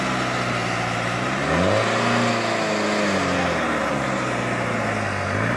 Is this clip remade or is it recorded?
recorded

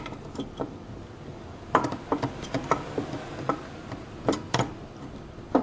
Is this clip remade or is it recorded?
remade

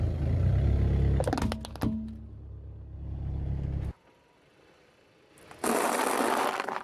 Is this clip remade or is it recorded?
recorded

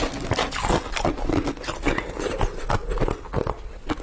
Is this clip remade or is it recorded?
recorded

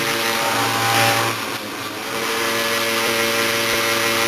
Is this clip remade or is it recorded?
remade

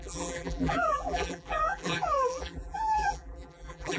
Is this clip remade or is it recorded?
remade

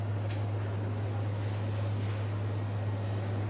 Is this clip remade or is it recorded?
recorded